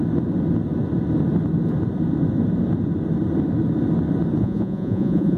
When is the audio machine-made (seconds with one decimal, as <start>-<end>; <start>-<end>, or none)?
4.4-5.4